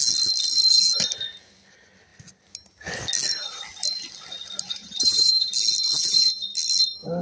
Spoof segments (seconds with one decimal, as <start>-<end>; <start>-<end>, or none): 4.8-5.5